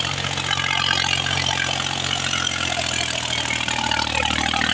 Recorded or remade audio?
recorded